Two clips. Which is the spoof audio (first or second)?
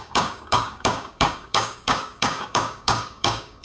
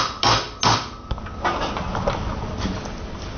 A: first